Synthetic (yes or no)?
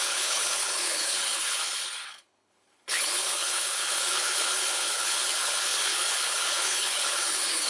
yes